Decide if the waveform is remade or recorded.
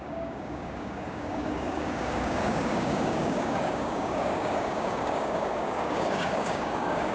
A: remade